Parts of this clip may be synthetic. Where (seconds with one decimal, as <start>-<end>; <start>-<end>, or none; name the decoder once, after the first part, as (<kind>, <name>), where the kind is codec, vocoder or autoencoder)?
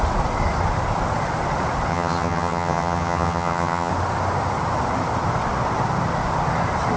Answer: 1.9-3.9 (vocoder, HiFi-GAN)